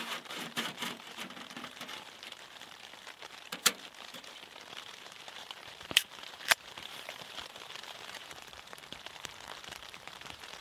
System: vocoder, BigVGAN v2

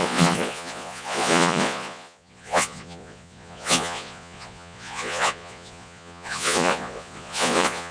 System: vocoder, Vocos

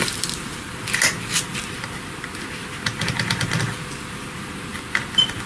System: none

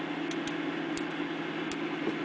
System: none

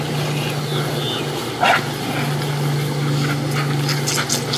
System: none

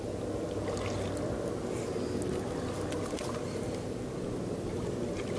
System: none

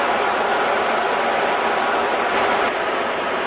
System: none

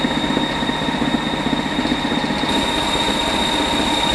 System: none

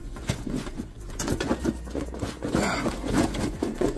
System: vocoder, Vocos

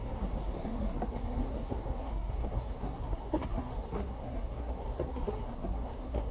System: codec, SNAC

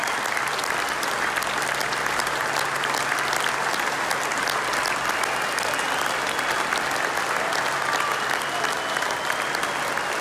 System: none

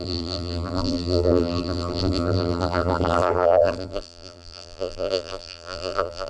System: vocoder, BigVGAN v2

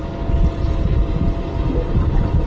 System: none